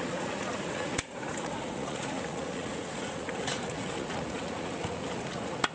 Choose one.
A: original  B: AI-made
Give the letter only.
B